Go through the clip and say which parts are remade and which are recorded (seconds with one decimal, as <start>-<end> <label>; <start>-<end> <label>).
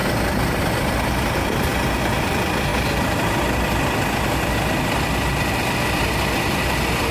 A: 0.0-7.1 recorded